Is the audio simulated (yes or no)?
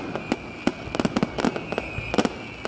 no